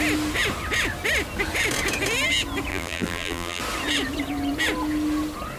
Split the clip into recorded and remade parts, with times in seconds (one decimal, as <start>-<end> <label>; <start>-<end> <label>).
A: 0.0-2.7 recorded; 2.7-3.6 remade; 3.6-5.6 recorded